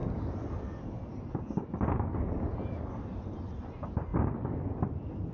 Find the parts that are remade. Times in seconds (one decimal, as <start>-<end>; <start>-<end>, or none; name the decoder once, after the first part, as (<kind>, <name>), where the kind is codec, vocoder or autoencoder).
0.0-0.9 (vocoder, BigVGAN v2); 4.1-5.3